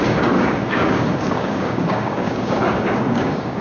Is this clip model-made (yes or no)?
yes